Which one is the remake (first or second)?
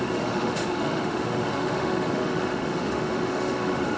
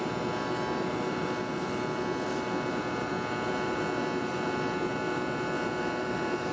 first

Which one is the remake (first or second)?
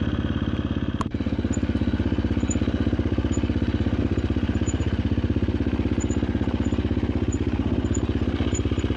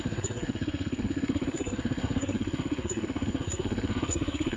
second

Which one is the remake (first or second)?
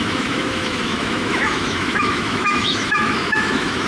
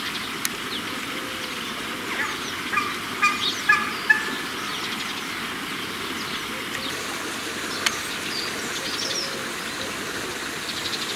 first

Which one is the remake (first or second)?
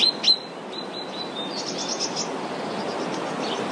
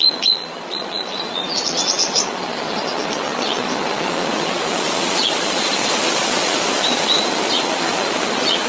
second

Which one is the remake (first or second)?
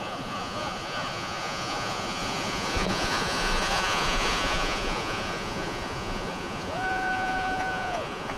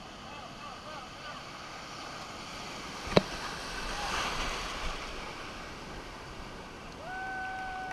first